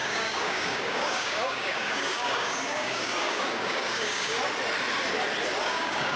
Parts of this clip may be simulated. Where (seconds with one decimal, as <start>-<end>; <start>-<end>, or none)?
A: 0.0-4.4; 5.6-6.2

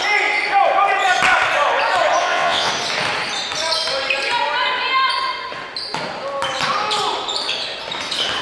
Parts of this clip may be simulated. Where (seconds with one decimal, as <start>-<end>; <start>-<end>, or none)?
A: 2.2-2.7